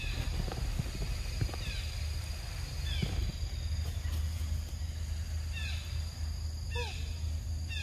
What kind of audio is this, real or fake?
real